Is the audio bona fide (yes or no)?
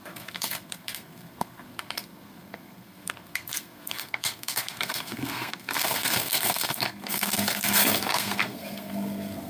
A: no